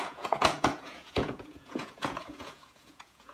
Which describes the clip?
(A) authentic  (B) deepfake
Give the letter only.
B